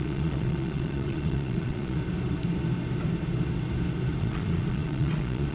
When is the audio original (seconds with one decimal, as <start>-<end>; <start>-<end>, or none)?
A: 2.0-4.2